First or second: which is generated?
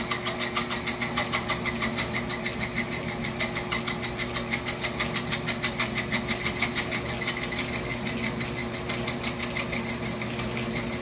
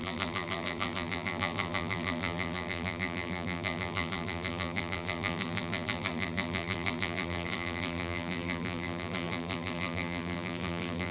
second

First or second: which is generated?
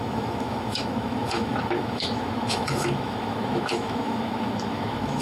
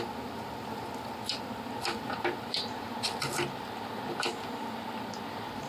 first